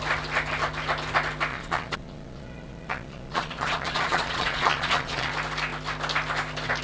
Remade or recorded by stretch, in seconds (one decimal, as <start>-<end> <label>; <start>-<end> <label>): 0.0-1.5 recorded; 1.5-5.3 remade; 5.3-6.8 recorded